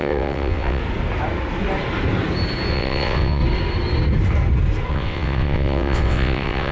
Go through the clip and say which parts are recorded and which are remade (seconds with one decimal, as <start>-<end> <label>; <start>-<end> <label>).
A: 0.0-0.8 remade; 0.8-2.7 recorded; 2.7-3.4 remade; 3.4-4.9 recorded; 4.9-6.7 remade